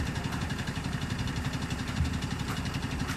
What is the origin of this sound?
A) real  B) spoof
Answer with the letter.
B